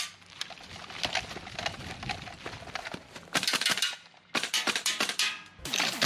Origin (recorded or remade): recorded